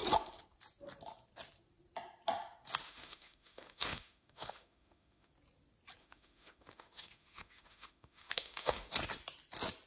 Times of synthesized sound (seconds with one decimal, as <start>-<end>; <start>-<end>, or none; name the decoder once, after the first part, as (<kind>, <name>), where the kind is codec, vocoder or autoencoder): 2.8-5.3 (autoencoder, DAC-VAE); 6.0-8.9